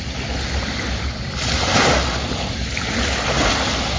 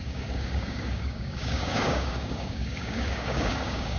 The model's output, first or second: second